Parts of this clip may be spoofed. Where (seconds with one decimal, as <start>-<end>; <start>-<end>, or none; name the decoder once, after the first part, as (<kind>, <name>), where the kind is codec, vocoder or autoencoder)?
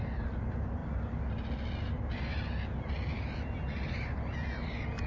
none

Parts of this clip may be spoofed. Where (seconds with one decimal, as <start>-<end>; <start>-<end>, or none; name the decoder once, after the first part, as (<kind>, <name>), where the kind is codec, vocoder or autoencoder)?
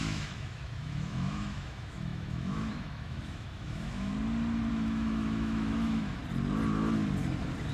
0.0-4.1 (autoencoder, DAC-VAE); 4.7-6.2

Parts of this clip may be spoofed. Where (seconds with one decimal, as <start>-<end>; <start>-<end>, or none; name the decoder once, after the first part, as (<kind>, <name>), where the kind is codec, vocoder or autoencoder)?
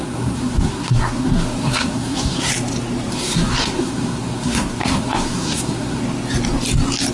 0.0-2.5 (codec, SNAC); 3.1-6.0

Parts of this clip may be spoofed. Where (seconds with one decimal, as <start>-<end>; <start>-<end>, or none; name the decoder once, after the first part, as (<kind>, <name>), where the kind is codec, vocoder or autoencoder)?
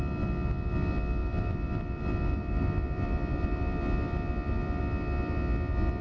1.2-4.8 (vocoder, BigVGAN v2)